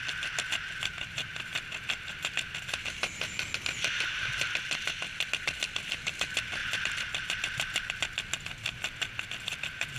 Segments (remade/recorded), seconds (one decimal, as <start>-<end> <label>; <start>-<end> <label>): 0.0-6.6 recorded; 6.6-7.9 remade; 7.9-10.0 recorded